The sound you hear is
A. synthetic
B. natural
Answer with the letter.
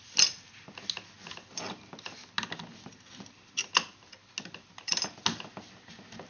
B